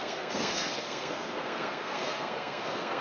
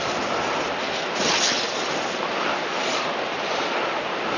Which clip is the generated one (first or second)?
first